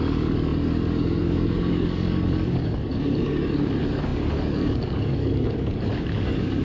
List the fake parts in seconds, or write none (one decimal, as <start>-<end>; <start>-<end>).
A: 0.0-6.6